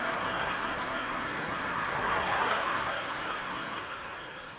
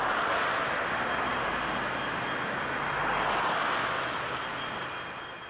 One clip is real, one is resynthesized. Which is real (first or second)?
second